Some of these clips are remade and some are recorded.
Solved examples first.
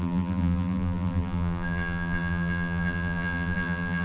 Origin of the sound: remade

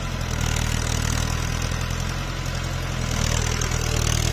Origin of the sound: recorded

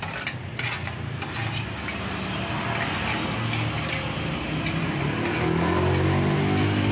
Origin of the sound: recorded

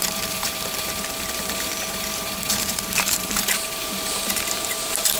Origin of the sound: remade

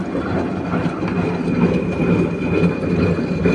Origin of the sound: recorded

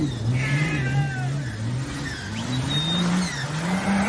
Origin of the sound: recorded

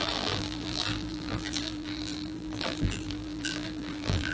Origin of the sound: remade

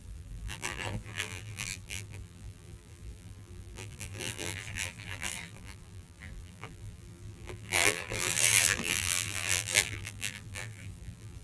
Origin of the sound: remade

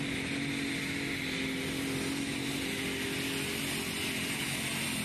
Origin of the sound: recorded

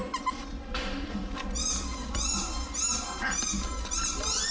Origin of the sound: recorded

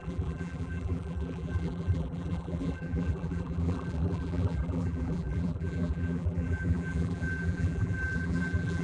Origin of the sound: remade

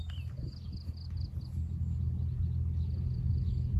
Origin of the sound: recorded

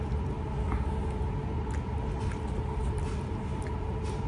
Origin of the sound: recorded